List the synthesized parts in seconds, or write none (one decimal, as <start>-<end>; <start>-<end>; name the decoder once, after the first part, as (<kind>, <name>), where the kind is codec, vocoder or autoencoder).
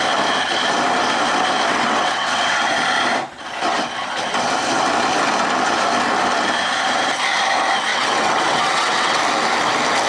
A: 1.7-2.7 (vocoder, WaveNeXt); 7.9-9.2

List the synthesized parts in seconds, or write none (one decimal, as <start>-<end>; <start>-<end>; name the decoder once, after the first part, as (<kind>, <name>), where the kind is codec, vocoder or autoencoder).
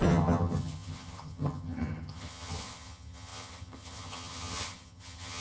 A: 0.0-5.4 (vocoder, HiFi-GAN)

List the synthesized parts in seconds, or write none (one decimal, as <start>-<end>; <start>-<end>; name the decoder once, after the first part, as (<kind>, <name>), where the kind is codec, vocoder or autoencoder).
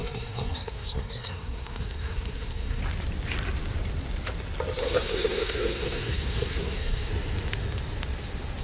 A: 0.0-2.8 (codec, SNAC); 4.8-7.1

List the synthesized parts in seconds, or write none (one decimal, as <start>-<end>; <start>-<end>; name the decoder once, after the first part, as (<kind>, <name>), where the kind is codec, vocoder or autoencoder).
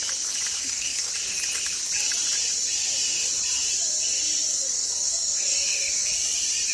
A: 0.6-1.1 (codec, SNAC); 4.5-5.9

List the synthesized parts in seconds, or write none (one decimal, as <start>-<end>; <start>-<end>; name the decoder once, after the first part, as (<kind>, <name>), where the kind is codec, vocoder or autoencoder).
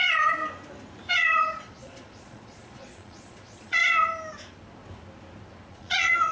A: 0.0-0.4 (vocoder, Vocos); 1.1-3.8; 5.7-6.3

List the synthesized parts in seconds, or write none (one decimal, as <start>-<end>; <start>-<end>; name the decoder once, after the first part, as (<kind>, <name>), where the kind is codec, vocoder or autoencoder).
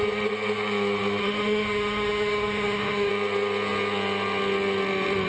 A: 1.2-3.1 (autoencoder, DAC-VAE)